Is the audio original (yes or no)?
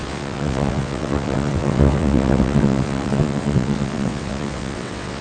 no